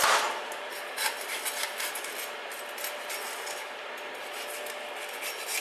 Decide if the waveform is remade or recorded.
recorded